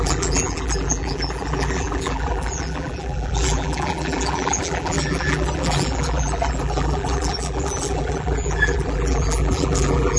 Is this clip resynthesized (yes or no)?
yes